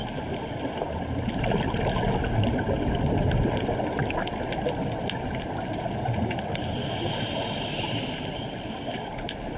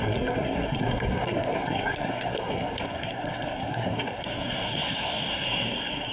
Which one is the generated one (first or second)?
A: second